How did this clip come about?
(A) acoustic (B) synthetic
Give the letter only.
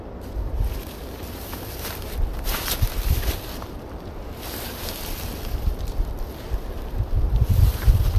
B